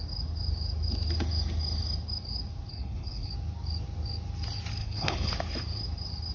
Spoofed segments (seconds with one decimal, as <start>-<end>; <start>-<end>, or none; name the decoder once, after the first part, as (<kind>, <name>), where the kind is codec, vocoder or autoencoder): 2.7-3.3 (codec, HILCodec); 4.8-5.3